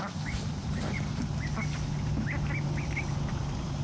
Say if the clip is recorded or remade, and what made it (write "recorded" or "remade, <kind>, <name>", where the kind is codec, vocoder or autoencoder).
recorded